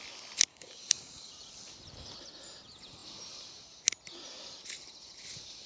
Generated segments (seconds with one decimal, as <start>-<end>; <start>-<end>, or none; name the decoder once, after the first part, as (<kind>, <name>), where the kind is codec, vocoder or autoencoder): 0.5-1.3 (codec, DAC)